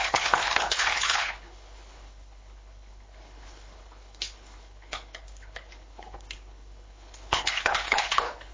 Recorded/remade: remade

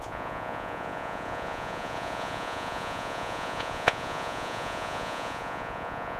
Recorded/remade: remade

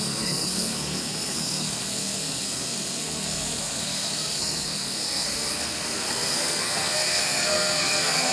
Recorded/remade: remade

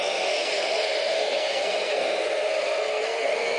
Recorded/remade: remade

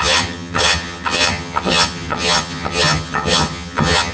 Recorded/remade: remade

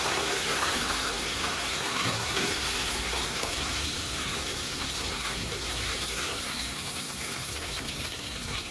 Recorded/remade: remade